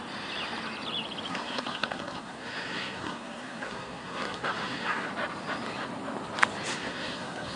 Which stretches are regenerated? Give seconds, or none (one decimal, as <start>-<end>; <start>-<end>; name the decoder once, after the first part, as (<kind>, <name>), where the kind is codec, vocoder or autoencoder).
1.3-5.1 (codec, SNAC); 6.7-7.6